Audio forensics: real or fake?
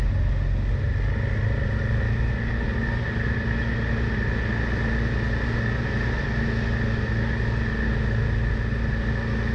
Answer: real